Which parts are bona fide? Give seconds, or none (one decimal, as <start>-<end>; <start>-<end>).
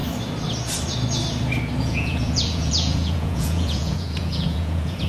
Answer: 0.0-1.8